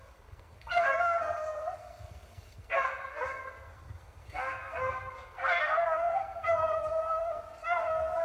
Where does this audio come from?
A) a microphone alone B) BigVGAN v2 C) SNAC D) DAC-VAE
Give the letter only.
C